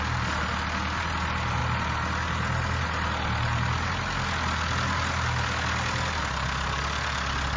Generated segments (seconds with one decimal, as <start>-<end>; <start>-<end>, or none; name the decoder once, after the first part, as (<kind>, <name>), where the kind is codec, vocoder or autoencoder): none